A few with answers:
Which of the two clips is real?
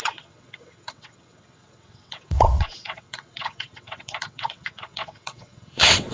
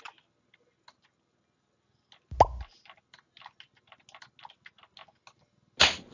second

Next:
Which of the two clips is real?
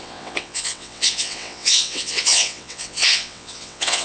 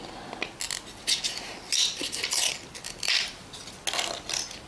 second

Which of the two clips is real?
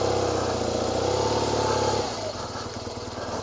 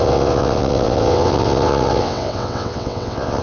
first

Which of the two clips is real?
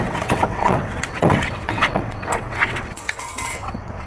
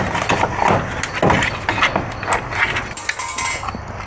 second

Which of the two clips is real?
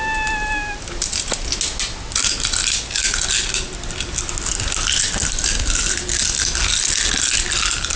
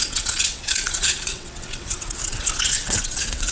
first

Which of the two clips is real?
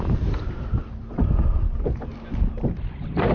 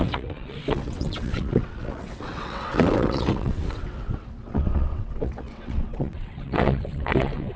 first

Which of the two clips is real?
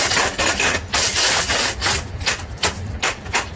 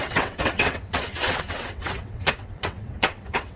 first